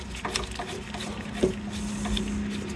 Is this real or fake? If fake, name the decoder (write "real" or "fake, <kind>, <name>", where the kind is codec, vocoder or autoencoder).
real